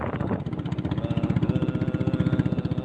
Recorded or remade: recorded